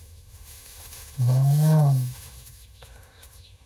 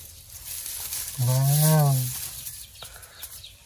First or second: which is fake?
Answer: first